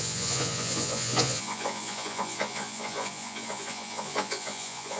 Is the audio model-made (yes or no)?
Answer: yes